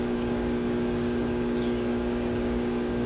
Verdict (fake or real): fake